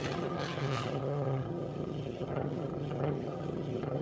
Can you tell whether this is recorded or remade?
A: remade